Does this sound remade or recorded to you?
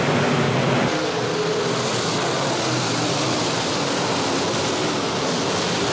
recorded